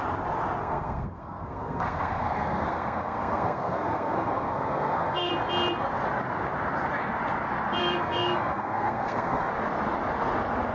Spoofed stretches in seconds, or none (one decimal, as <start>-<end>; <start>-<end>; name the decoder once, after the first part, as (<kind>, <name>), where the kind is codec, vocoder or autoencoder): 0.6-5.3 (codec, SNAC); 7.8-9.5